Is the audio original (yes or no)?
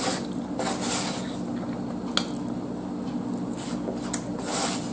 yes